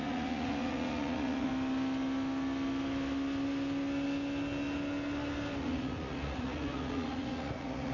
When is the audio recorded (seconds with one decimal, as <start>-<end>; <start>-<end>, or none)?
1.5-5.6